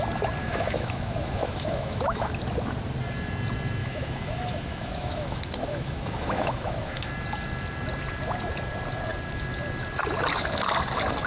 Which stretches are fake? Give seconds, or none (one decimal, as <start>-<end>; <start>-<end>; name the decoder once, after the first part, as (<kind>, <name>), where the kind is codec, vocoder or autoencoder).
0.4-2.3 (autoencoder, DAC-VAE); 3.8-7.1